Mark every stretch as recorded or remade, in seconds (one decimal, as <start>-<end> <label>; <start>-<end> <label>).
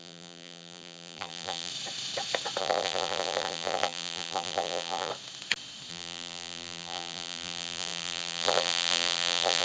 0.0-1.7 remade; 1.7-2.6 recorded; 2.6-5.1 remade; 5.1-5.9 recorded; 5.9-9.6 remade